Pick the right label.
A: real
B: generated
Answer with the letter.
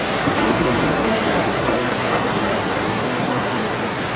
B